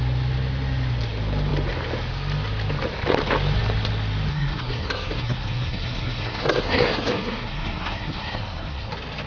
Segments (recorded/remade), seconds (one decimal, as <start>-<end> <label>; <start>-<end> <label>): 0.0-4.3 recorded; 4.3-8.9 remade; 8.9-9.3 recorded